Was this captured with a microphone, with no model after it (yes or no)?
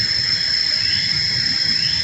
no